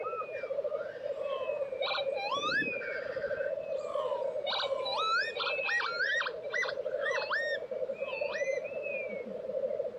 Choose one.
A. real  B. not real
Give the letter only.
A